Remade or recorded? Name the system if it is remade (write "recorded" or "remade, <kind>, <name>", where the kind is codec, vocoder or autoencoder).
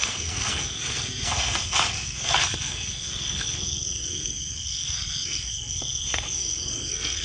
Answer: remade, codec, SNAC